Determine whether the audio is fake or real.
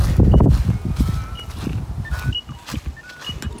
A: real